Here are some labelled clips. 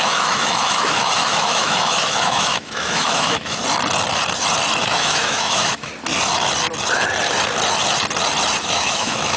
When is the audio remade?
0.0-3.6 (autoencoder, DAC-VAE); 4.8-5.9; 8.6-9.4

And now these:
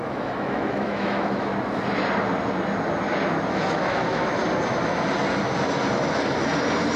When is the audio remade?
0.0-1.5 (autoencoder, DAC-VAE); 3.5-4.4